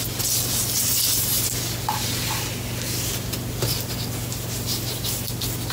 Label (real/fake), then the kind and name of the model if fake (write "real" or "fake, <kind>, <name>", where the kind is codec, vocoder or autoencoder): real